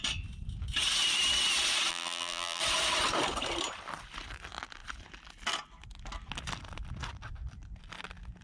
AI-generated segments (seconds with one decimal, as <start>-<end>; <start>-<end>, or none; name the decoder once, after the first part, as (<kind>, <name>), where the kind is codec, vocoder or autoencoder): 1.9-2.6 (vocoder, BigVGAN v2)